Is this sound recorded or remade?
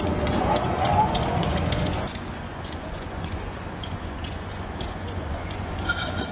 remade